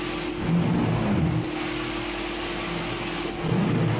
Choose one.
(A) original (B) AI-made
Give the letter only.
A